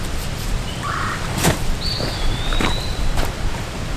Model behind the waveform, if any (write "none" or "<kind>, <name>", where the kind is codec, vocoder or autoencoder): vocoder, BigVGAN v2